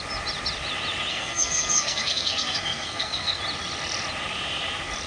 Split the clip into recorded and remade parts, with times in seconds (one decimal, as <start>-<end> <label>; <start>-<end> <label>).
0.0-1.1 recorded; 1.1-3.4 remade; 3.4-5.1 recorded